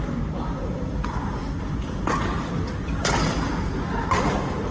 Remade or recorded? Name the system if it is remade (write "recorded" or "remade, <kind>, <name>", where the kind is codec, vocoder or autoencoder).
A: recorded